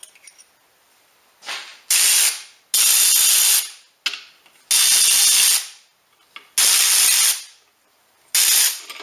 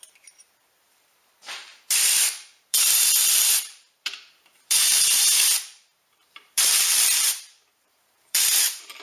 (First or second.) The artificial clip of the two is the second